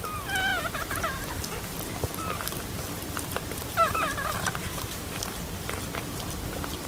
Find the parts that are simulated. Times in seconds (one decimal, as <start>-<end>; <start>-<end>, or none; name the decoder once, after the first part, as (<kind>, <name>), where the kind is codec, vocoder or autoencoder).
4.7-5.2 (codec, DAC)